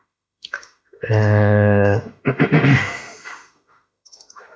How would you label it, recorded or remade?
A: remade